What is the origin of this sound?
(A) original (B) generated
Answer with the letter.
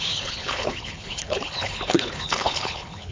B